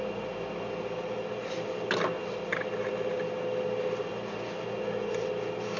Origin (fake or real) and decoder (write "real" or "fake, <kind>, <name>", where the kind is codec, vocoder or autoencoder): real